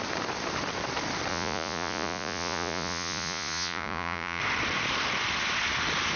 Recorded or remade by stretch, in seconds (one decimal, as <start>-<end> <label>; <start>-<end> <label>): 0.0-1.3 recorded; 1.3-4.4 remade; 4.4-6.2 recorded

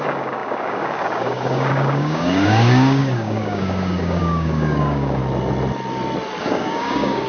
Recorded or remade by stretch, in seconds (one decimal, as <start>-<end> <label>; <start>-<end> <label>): 0.0-5.2 remade; 5.2-6.4 recorded; 6.4-7.3 remade

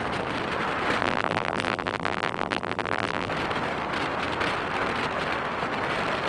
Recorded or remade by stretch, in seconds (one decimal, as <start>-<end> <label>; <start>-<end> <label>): 0.0-1.0 recorded; 1.0-3.3 remade; 3.3-6.3 recorded

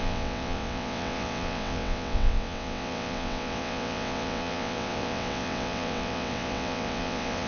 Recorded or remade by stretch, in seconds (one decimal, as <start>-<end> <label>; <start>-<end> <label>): 0.0-7.5 remade

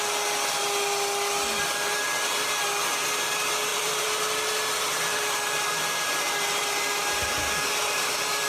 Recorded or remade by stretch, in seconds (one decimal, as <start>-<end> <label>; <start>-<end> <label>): 0.0-3.7 recorded; 3.7-8.5 remade

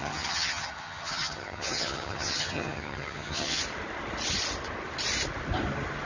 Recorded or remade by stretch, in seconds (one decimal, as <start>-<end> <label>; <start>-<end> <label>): 0.0-3.6 remade; 3.6-6.0 recorded

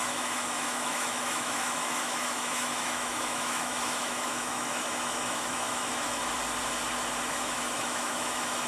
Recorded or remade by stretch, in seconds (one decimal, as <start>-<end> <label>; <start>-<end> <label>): 0.0-6.2 remade; 6.2-7.3 recorded; 7.3-8.7 remade

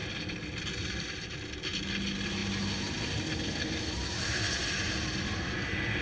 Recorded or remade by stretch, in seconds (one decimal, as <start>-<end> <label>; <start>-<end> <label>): 0.0-6.0 recorded